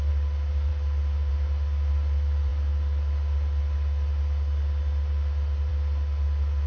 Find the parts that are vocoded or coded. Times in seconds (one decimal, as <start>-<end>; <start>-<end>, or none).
none